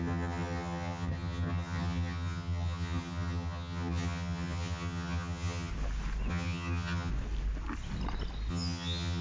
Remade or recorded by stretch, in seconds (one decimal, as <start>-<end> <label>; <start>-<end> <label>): 0.0-5.7 remade; 5.7-6.3 recorded; 6.3-7.1 remade; 7.1-8.5 recorded; 8.5-9.2 remade